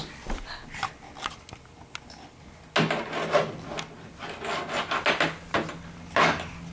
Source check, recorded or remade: recorded